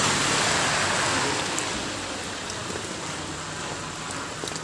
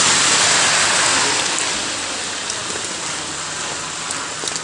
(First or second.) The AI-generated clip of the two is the first